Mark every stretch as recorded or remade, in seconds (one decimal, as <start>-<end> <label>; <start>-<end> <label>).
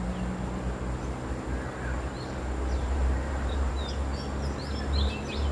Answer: 0.0-2.8 recorded; 2.8-3.7 remade; 3.7-5.5 recorded